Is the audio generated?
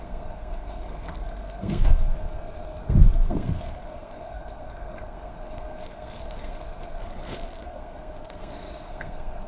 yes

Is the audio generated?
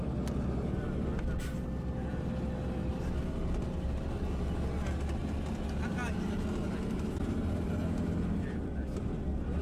no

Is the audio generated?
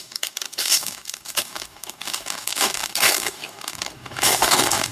yes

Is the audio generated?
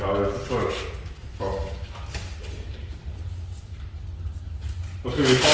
no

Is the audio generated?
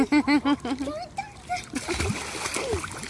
no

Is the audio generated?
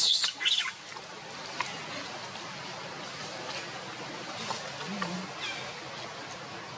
no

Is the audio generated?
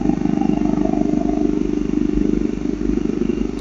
no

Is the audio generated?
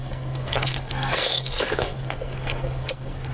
yes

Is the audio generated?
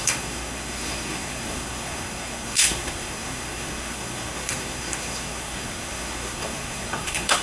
yes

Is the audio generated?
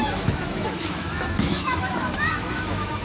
yes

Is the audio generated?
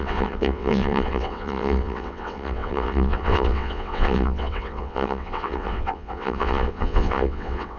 yes